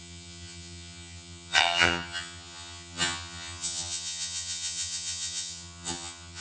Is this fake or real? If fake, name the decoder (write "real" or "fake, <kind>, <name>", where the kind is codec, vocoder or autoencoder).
fake, vocoder, HiFi-GAN